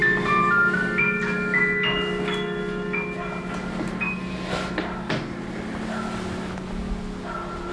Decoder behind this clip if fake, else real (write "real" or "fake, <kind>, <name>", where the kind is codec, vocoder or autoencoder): real